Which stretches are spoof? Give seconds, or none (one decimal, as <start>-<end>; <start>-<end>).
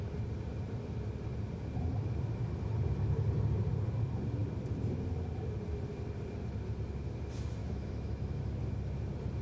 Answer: 7.6-8.6